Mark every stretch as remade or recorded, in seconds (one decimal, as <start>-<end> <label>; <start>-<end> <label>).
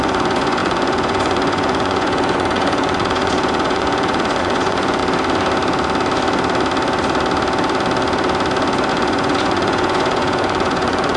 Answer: 0.0-5.0 remade; 5.0-8.9 recorded; 8.9-11.2 remade